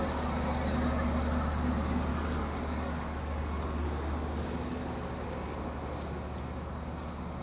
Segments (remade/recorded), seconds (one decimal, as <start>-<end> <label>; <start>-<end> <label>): 0.0-2.1 recorded; 2.1-4.9 remade; 4.9-7.4 recorded